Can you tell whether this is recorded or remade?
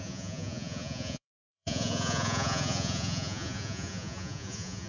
remade